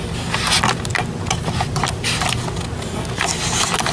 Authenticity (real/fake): real